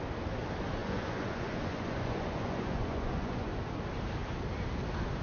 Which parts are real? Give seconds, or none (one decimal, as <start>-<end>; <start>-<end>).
0.0-0.8; 3.5-5.2

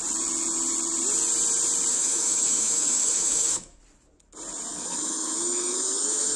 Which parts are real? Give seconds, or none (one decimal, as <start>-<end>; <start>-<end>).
0.0-1.9; 3.8-4.7

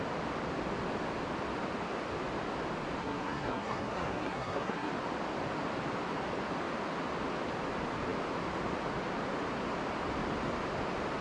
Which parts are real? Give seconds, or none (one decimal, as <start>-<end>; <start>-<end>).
0.0-3.0; 4.9-11.2